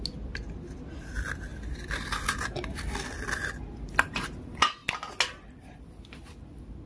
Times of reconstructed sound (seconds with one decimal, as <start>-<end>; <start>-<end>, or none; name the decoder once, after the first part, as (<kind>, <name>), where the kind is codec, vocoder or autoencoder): none